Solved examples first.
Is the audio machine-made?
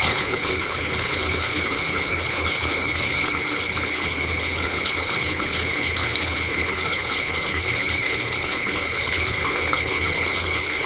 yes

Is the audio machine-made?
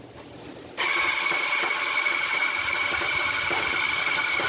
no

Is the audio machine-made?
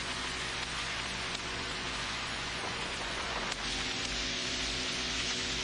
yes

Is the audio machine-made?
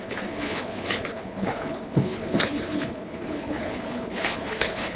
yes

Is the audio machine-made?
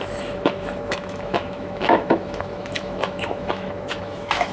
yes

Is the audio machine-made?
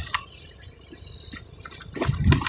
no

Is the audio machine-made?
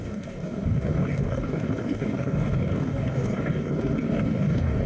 yes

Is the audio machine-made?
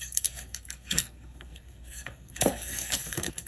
yes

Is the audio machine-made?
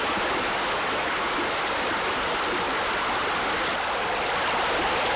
no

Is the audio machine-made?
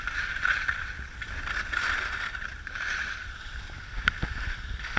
no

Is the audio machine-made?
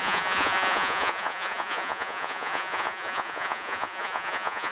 yes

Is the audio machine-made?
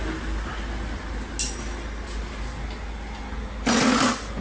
no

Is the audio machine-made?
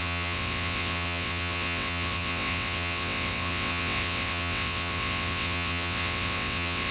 yes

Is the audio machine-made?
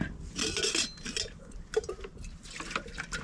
no